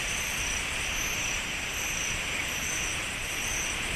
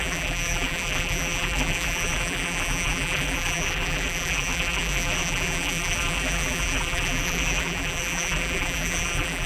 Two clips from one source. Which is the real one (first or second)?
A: first